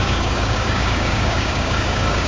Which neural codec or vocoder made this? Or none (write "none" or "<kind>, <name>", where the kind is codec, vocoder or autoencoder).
codec, DAC